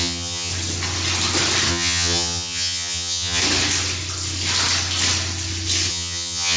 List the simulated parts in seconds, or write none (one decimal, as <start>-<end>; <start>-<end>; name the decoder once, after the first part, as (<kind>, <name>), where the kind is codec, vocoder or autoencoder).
0.0-0.5 (vocoder, HiFi-GAN); 1.7-3.4; 5.9-6.6